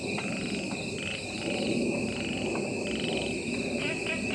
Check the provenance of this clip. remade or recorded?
recorded